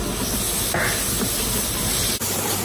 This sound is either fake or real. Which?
real